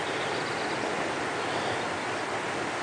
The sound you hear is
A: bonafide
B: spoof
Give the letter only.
A